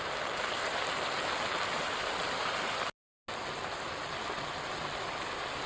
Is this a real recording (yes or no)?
yes